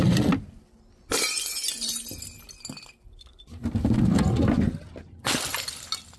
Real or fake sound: real